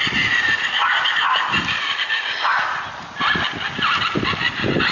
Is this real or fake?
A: real